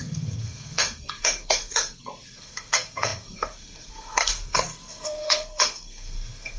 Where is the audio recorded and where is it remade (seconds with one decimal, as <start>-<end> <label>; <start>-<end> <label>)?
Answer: 0.0-6.6 remade